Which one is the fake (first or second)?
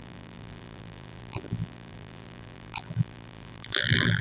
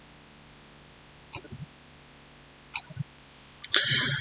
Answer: first